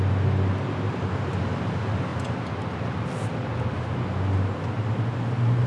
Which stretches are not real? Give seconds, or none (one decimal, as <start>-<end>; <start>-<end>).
none